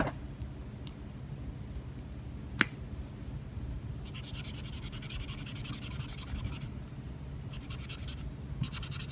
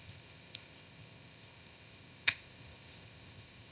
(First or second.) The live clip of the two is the first